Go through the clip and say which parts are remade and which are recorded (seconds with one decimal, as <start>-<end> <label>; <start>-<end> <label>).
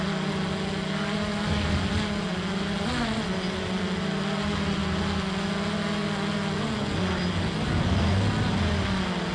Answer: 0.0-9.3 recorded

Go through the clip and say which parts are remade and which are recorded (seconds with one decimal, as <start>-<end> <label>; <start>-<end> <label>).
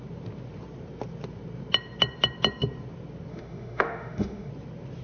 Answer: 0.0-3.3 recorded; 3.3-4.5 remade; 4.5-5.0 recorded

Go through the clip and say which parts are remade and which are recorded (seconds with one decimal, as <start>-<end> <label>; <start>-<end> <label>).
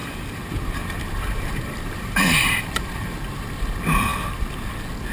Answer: 0.0-3.1 remade; 3.1-5.1 recorded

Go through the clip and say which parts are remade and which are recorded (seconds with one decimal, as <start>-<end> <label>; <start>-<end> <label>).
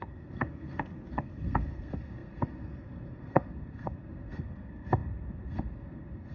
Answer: 0.0-6.3 remade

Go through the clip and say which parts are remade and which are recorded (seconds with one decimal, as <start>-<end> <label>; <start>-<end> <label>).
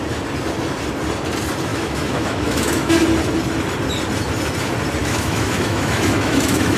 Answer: 0.0-1.7 recorded; 1.7-2.9 remade; 2.9-5.0 recorded; 5.0-6.8 remade